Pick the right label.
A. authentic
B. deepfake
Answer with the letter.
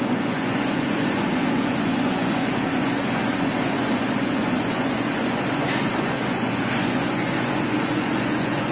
B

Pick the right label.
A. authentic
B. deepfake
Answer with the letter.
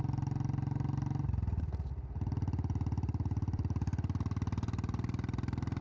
A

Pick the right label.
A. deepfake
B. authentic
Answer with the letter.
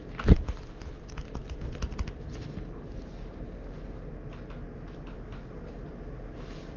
B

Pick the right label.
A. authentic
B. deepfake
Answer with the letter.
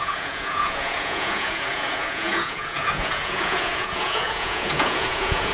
B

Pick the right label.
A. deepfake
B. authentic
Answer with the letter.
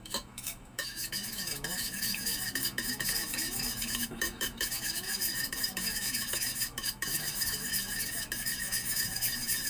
A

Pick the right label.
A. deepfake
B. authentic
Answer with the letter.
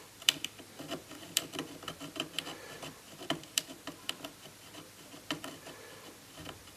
A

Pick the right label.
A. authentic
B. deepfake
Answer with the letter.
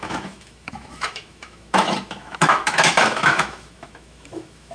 B